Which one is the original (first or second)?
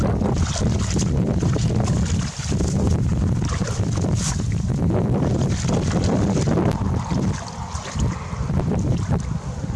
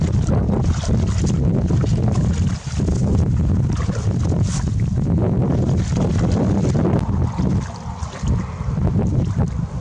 second